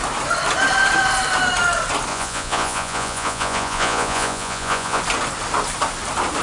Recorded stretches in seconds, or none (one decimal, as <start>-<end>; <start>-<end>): 0.0-2.1; 5.0-6.4